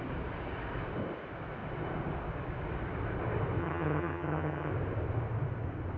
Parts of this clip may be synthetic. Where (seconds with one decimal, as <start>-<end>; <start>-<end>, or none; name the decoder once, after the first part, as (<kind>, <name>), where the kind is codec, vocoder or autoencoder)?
3.6-4.7 (vocoder, HiFi-GAN)

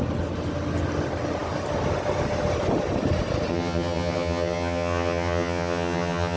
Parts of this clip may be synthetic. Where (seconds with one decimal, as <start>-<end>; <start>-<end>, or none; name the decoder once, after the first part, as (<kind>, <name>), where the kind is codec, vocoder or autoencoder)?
3.5-6.4 (vocoder, HiFi-GAN)